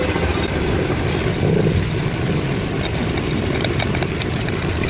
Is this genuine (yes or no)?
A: yes